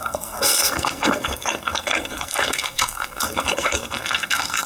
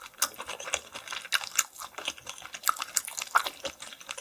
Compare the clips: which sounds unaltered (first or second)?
second